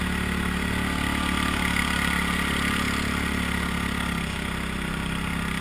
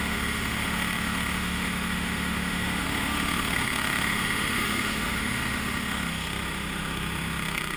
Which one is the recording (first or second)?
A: first